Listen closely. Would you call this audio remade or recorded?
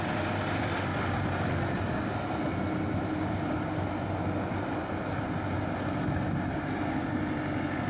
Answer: recorded